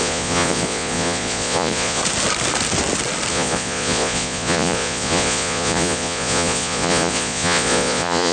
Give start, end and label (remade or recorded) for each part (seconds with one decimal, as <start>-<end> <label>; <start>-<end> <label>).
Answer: 0.0-2.0 remade; 2.0-3.3 recorded; 3.3-8.3 remade